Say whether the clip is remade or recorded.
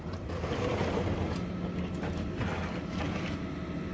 recorded